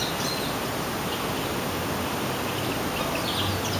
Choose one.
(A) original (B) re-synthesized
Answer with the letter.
A